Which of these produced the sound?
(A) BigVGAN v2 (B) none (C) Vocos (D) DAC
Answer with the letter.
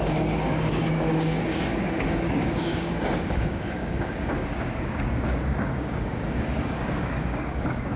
D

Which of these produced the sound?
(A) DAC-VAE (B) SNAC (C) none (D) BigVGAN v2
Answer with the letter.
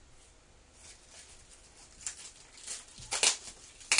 C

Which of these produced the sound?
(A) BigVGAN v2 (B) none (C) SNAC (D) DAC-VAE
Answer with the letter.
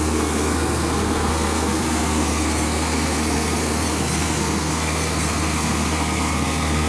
C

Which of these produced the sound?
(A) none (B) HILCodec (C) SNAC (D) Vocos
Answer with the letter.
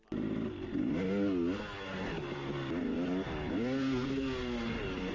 A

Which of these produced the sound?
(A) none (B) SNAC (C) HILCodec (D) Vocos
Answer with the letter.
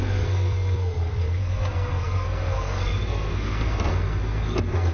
B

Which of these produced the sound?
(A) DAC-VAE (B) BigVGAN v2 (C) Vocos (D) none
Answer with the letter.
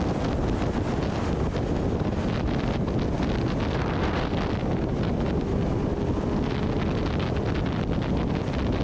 D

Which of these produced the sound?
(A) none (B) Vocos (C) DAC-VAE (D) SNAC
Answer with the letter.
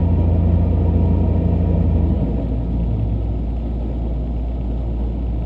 A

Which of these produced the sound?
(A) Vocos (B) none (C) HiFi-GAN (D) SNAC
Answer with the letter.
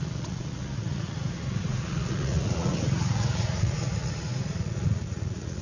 A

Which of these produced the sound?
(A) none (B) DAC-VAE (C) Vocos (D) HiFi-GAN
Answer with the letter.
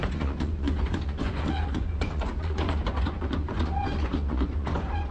C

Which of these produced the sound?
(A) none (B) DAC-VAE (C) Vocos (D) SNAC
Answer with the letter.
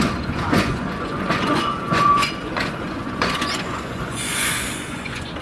C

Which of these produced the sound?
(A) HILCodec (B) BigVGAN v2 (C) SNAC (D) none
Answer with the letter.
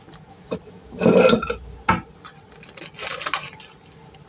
D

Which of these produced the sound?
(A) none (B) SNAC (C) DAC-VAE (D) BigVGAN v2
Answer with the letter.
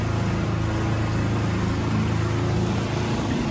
A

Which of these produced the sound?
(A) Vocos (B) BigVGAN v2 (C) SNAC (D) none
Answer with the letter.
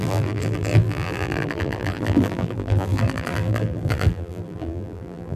B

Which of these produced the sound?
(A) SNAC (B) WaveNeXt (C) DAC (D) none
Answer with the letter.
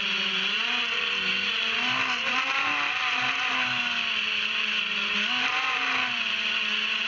D